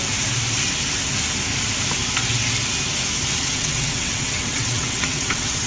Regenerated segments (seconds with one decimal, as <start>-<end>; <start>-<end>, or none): 3.4-5.7